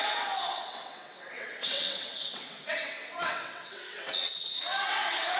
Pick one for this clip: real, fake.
fake